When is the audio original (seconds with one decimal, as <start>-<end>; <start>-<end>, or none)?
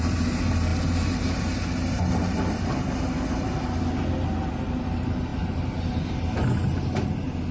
0.0-7.5